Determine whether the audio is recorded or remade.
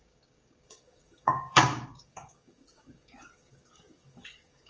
remade